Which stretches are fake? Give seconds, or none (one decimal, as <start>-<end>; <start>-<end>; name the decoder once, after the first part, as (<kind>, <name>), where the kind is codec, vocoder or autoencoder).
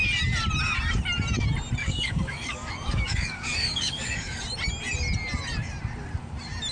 1.8-4.4 (codec, DAC)